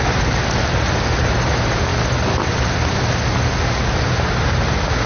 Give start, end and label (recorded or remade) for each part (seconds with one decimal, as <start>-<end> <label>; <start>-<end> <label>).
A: 0.0-5.1 recorded